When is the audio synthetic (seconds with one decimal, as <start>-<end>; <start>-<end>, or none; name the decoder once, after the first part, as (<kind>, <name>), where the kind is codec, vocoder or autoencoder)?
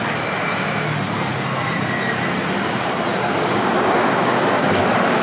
3.1-4.8 (codec, DAC)